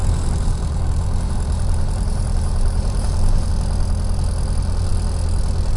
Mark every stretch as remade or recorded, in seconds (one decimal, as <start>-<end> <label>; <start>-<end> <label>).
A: 0.0-3.5 remade; 3.5-5.8 recorded